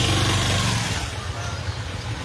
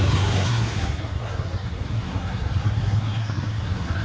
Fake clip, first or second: second